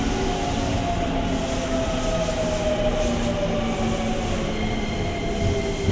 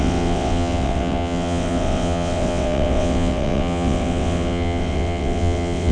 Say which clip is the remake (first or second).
second